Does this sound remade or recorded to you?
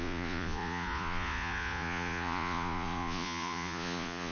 remade